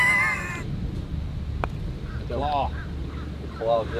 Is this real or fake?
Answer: real